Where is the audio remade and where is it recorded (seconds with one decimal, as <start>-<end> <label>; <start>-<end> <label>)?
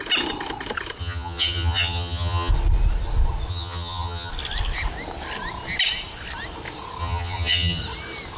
0.0-1.0 recorded; 1.0-2.5 remade; 2.5-3.5 recorded; 3.5-4.3 remade; 4.3-7.0 recorded; 7.0-7.8 remade; 7.8-8.4 recorded